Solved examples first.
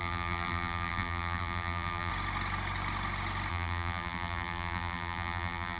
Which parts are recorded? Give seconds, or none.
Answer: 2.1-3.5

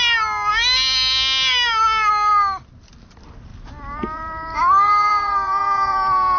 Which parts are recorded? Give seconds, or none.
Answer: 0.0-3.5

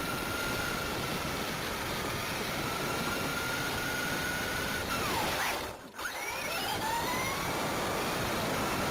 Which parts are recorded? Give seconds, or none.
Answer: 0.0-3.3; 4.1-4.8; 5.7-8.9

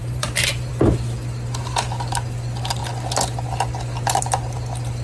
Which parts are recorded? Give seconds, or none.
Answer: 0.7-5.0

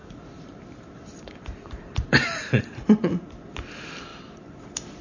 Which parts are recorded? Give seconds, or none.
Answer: 2.6-5.0

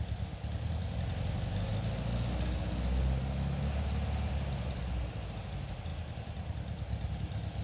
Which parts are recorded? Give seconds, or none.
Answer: 0.0-7.6

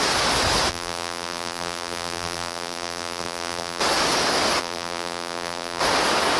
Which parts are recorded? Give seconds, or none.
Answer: 0.0-0.7; 3.8-4.6; 5.8-6.4

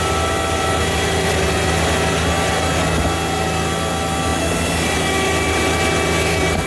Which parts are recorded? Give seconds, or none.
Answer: 0.0-4.3; 5.6-6.7